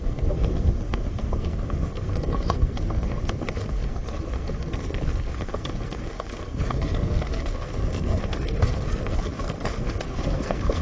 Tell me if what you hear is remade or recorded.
remade